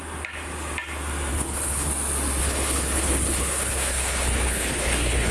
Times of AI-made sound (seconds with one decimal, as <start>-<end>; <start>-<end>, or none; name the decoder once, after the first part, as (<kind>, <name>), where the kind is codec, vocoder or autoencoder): 1.3-1.9 (codec, HILCodec); 2.4-5.3